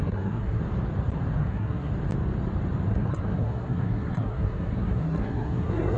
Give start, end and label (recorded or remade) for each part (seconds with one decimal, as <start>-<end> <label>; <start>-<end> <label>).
0.0-0.6 remade; 0.6-1.4 recorded; 1.4-1.9 remade; 1.9-2.9 recorded; 2.9-6.0 remade